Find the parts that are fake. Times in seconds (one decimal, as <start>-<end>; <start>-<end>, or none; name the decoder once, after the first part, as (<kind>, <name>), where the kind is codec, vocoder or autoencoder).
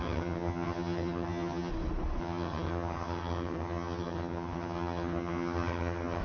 0.0-1.7 (vocoder, HiFi-GAN); 2.2-6.2